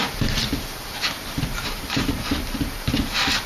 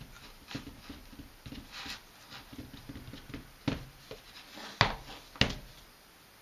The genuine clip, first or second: second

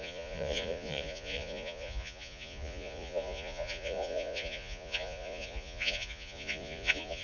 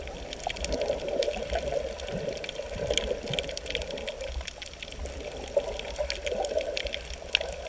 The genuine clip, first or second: second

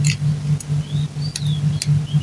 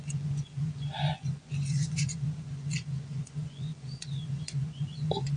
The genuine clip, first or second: first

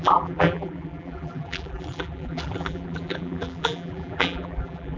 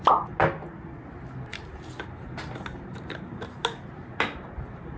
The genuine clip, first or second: second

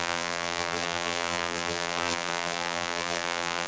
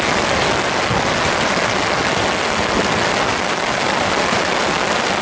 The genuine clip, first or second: second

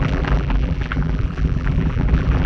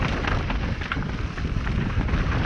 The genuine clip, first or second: second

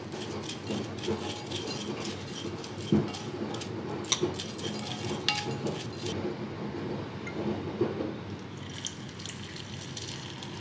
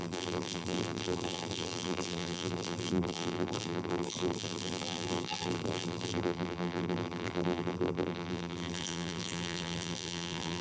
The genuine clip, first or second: first